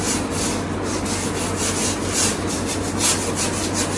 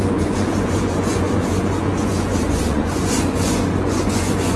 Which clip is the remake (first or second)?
second